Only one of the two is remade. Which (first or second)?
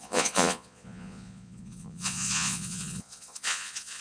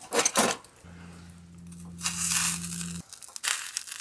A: first